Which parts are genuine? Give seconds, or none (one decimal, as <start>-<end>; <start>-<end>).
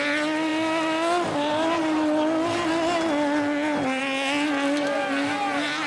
0.0-5.9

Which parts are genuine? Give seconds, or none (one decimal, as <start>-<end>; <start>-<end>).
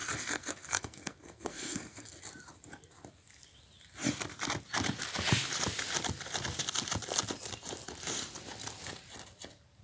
2.2-9.8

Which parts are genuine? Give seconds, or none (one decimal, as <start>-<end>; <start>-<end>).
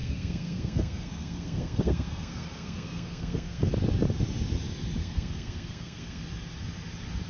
3.7-5.0; 6.2-7.3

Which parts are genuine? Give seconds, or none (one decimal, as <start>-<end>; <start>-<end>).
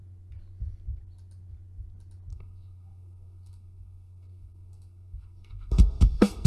0.0-2.3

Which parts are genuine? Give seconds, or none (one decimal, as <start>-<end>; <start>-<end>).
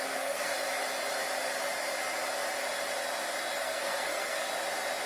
0.5-3.6; 4.5-5.1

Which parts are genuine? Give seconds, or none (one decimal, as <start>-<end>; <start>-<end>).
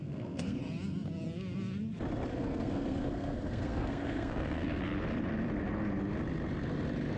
0.6-2.3; 4.8-7.2